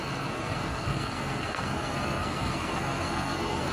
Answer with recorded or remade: remade